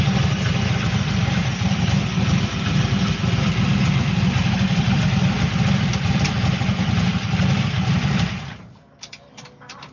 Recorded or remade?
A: recorded